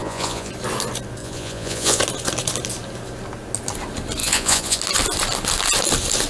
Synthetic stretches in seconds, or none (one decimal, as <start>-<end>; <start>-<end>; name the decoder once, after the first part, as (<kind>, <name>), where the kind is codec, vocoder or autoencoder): 0.0-0.5 (vocoder, Vocos); 1.2-2.0; 4.2-4.8